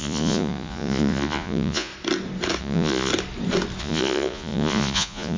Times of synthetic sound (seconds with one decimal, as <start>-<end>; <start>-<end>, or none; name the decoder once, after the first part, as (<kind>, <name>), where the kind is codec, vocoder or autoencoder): 0.0-1.9 (vocoder, Vocos); 2.6-3.1; 3.8-5.4